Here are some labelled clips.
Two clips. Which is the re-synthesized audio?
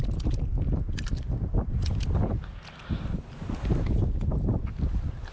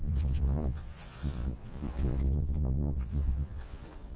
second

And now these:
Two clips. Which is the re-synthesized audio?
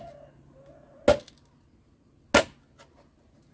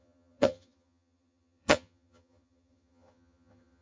second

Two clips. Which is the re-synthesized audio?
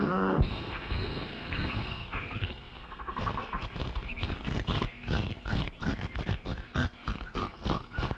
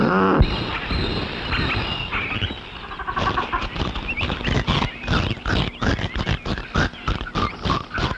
first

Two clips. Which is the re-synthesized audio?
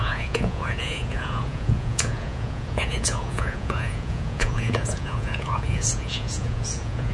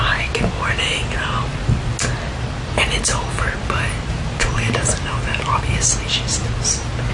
first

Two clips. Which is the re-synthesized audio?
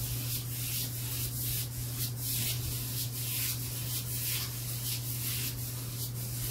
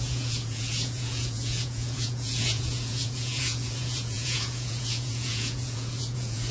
second